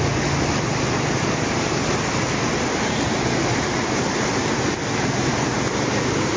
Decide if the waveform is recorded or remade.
recorded